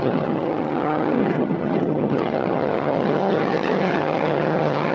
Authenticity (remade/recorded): remade